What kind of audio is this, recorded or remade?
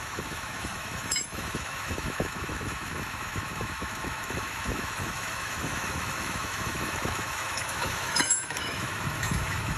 remade